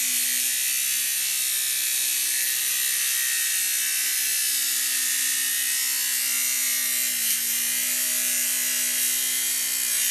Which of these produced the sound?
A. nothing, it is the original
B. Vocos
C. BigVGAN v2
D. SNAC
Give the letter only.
A